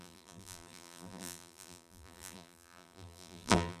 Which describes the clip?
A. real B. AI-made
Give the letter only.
B